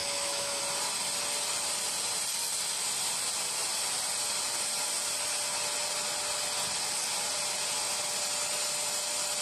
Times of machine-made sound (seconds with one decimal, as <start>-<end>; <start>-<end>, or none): 0.0-0.6